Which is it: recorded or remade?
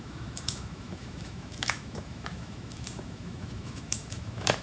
remade